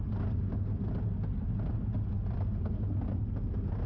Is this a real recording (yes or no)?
yes